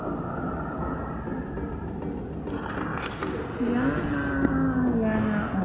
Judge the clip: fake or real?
real